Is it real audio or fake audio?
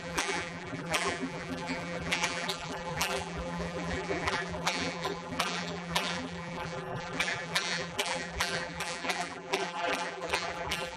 fake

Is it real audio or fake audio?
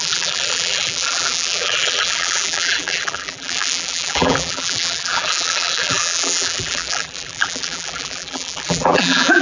fake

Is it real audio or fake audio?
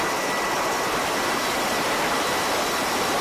real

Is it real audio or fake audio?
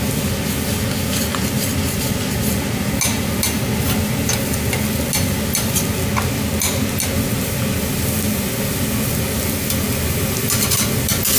real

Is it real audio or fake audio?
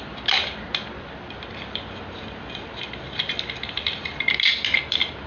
fake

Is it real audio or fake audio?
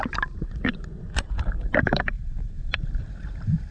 fake